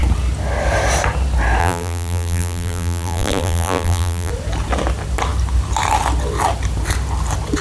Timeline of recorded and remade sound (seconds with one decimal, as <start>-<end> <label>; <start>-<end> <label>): 0.0-1.6 recorded; 1.6-4.3 remade; 4.3-7.6 recorded